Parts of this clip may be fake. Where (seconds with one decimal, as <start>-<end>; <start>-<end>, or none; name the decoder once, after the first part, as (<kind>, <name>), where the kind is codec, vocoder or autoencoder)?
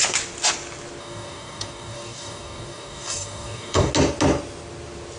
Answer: 1.0-3.9 (codec, DAC)